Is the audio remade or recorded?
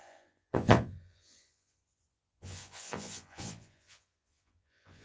remade